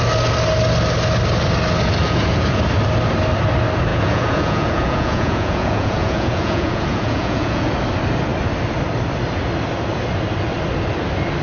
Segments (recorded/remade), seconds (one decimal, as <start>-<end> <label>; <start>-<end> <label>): 0.0-2.0 recorded; 2.0-2.6 remade; 2.6-3.9 recorded; 3.9-7.7 remade; 7.7-11.4 recorded